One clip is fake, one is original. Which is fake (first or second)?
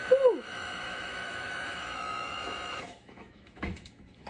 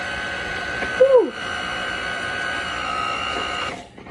first